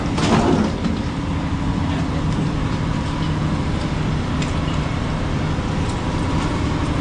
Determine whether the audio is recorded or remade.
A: remade